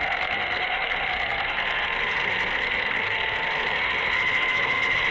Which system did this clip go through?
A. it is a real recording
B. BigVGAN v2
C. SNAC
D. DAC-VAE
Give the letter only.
C